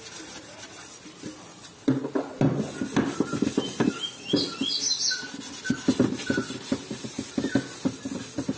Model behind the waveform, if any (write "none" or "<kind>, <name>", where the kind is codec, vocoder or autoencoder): none